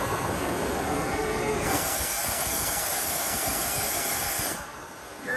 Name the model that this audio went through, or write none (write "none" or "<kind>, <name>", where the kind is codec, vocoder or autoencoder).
codec, SNAC